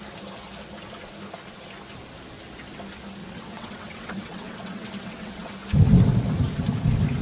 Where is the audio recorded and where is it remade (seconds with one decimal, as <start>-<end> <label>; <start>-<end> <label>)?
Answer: 0.0-3.2 recorded; 3.2-5.5 remade; 5.5-7.2 recorded